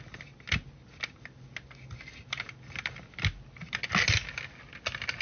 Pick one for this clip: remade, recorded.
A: recorded